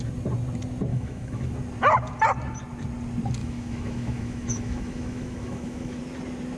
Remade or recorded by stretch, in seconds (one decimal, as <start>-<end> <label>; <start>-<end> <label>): 0.0-0.9 recorded; 0.9-1.5 remade; 1.5-3.4 recorded; 3.4-6.0 remade; 6.0-6.6 recorded